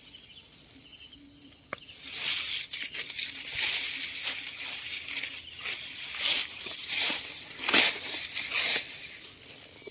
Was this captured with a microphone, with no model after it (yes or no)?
yes